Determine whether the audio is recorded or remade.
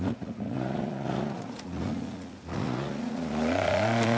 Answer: remade